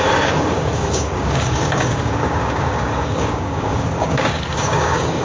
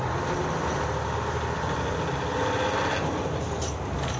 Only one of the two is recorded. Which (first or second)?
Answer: second